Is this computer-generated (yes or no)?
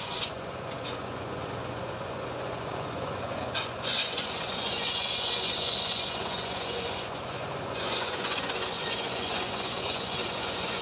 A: yes